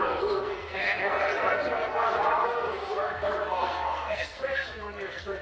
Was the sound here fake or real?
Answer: fake